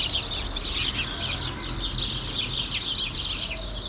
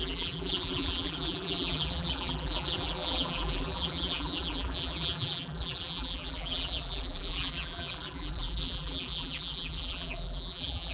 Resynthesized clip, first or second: second